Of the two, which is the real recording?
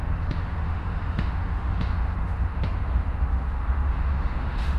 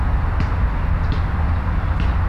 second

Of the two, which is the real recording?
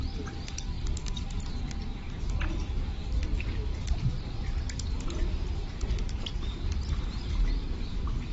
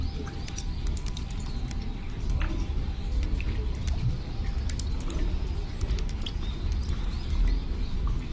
second